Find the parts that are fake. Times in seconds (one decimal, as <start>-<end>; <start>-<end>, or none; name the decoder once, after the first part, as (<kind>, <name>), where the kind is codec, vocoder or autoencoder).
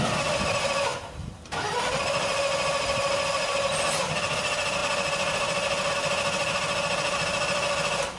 none